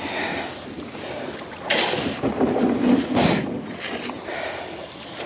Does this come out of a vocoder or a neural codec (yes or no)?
no